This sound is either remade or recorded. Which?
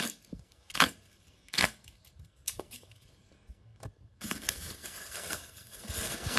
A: remade